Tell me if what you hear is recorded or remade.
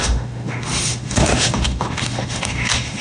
remade